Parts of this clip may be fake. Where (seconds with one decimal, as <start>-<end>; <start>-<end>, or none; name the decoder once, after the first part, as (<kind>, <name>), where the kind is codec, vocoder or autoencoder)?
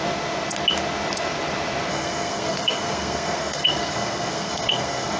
1.9-5.2 (codec, SNAC)